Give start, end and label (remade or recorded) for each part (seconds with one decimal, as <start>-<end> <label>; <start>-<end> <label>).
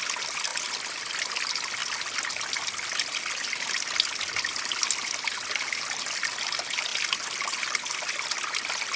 0.0-9.0 recorded